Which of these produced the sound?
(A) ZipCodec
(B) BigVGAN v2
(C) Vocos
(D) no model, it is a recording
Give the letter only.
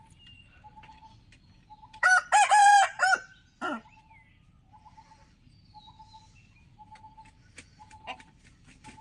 D